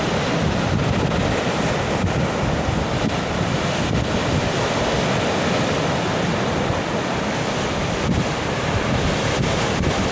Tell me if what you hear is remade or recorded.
remade